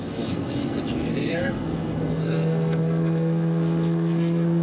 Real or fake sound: fake